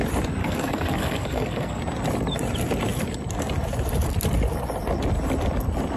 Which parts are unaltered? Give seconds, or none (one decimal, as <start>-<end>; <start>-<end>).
0.0-0.4; 1.8-6.0